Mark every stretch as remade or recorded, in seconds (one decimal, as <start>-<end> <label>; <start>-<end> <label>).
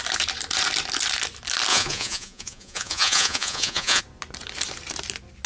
0.0-1.7 recorded; 1.7-4.0 remade; 4.0-5.5 recorded